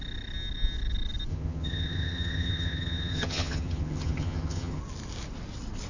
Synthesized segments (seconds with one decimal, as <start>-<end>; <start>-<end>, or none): 1.3-4.8